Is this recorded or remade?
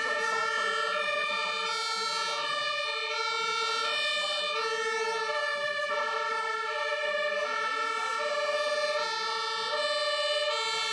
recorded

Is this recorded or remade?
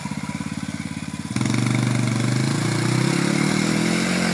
recorded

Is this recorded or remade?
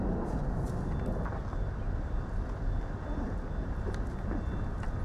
recorded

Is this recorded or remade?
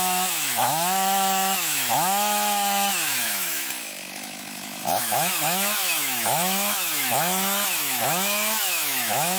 remade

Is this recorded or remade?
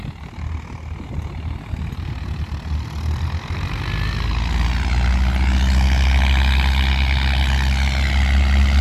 recorded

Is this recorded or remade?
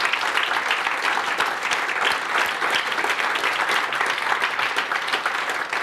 recorded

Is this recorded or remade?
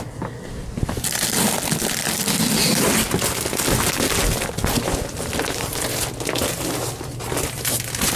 recorded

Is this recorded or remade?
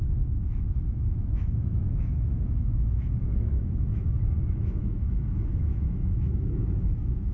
remade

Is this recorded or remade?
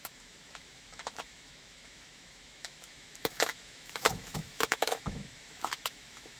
remade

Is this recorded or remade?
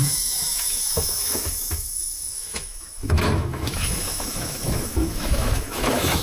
remade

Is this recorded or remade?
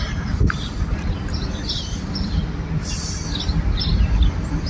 recorded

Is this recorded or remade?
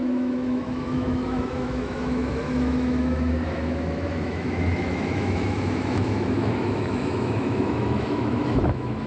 remade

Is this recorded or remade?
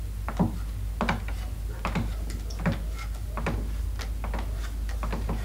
recorded